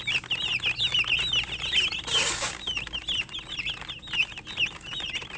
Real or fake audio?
real